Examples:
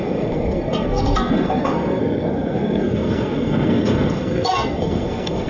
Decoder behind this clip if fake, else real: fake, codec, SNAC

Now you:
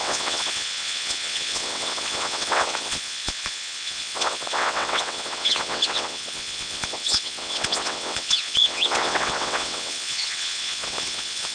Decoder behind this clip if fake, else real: fake, vocoder, WaveNeXt